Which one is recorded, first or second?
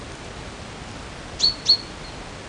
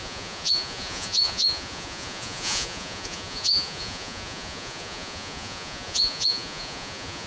first